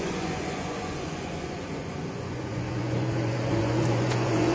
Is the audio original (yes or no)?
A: no